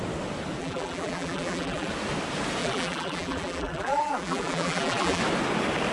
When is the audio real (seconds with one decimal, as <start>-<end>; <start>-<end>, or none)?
0.0-0.6; 1.9-2.6; 5.2-5.9